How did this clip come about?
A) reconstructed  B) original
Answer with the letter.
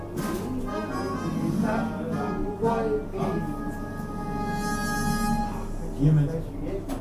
B